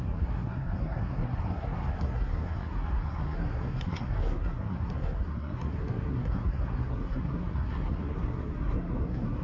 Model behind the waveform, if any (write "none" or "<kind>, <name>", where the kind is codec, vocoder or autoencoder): codec, SNAC